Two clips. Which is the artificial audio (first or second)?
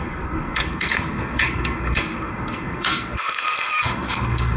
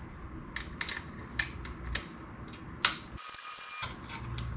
first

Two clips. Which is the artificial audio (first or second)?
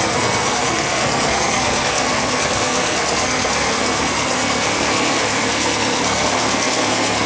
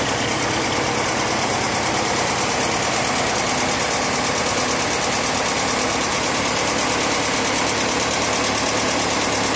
first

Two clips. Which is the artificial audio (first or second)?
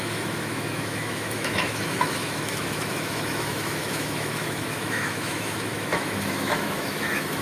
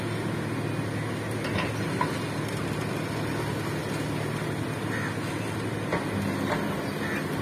first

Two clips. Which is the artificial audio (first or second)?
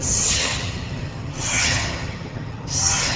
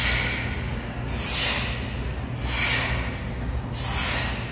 first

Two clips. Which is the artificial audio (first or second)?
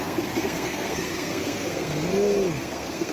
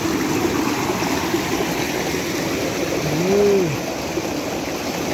first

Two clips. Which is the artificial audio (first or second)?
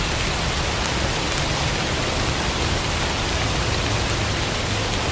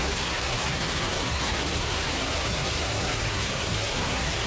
second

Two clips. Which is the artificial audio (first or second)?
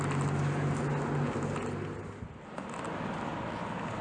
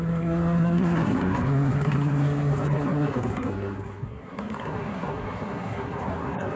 second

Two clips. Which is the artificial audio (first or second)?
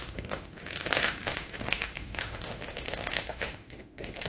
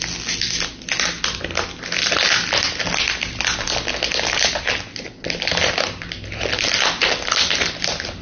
first